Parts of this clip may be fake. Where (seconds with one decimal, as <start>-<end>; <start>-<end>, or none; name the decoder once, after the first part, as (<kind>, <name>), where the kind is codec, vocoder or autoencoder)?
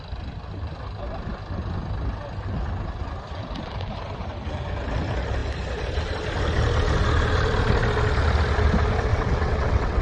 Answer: 9.1-10.0 (vocoder, WaveNeXt)